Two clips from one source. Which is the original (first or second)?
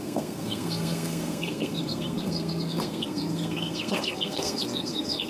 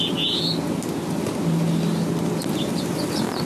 second